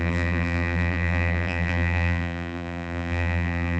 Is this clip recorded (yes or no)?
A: no